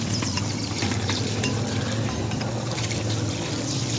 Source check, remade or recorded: recorded